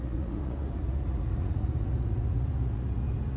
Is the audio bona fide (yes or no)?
no